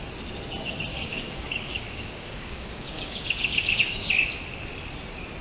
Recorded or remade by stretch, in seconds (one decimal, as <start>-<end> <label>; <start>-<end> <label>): 0.0-0.9 recorded; 0.9-4.1 remade; 4.1-5.4 recorded